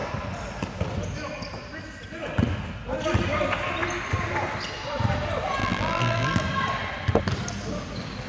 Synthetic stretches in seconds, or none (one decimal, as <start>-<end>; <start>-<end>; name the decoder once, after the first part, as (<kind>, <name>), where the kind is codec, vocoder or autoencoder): 5.6-6.4 (vocoder, BigVGAN v2)